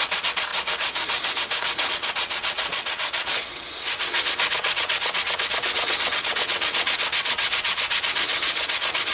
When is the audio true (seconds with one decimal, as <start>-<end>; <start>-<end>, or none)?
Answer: 0.5-1.9